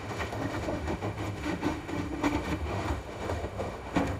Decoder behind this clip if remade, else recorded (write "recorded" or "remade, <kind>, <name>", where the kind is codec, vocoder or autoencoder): remade, autoencoder, DAC-VAE